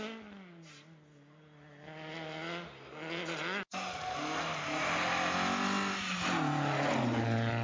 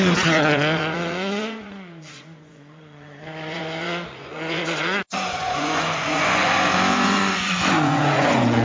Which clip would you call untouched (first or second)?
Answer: first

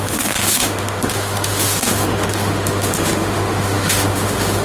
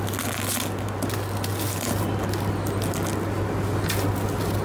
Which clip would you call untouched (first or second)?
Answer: second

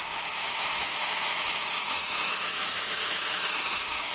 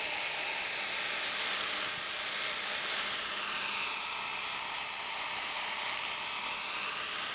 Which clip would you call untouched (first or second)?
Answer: second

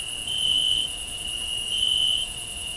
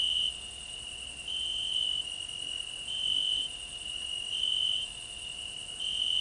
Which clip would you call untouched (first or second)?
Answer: second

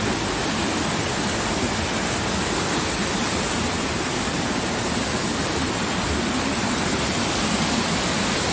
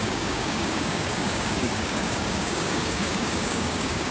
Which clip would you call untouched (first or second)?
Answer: first